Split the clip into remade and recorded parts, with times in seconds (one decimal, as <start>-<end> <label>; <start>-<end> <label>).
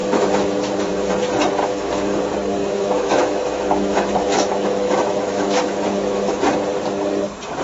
0.0-1.1 remade; 1.1-1.6 recorded; 1.6-2.2 remade; 2.2-2.6 recorded; 2.6-6.4 remade; 6.4-7.6 recorded